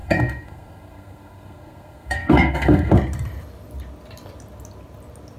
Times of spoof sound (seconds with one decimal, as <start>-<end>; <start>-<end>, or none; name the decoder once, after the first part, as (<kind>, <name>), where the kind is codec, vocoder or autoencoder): 0.0-2.9 (codec, SNAC)